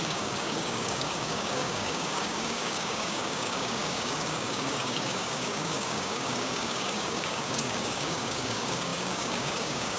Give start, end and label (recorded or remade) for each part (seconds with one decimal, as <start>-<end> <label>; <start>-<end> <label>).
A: 0.0-10.0 remade